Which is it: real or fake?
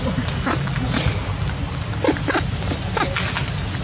real